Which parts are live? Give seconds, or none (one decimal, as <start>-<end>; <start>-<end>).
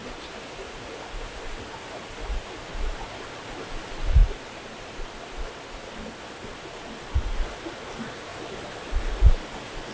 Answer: 0.0-9.9